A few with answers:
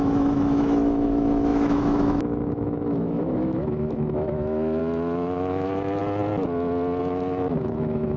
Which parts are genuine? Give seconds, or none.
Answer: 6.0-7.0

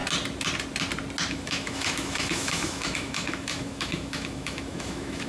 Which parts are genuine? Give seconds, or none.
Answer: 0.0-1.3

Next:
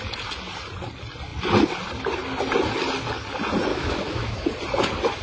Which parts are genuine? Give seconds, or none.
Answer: 0.0-3.7; 4.5-5.2